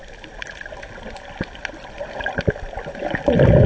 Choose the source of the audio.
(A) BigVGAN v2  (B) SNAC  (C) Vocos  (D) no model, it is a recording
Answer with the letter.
D